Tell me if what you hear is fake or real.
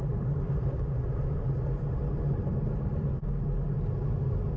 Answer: real